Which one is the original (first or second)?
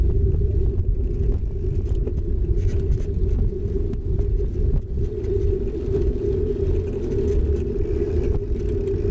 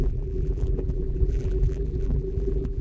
first